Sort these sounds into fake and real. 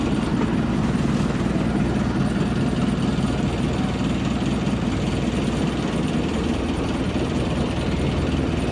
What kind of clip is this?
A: real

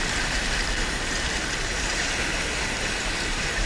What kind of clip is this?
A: fake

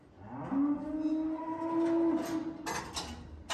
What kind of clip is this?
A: real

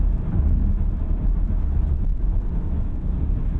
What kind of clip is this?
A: real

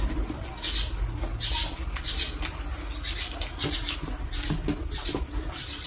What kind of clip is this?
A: real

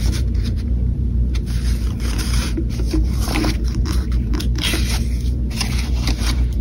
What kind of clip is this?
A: fake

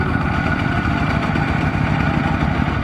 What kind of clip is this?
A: real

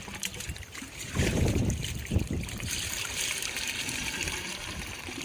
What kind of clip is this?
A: fake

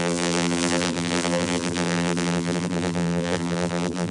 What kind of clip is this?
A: fake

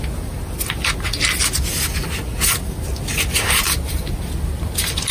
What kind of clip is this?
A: real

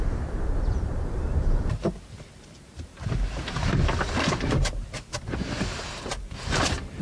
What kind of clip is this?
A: fake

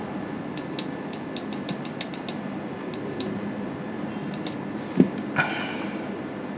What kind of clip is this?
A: real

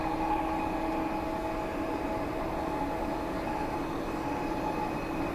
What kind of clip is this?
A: real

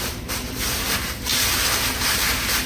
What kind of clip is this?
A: fake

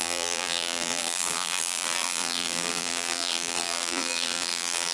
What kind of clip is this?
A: fake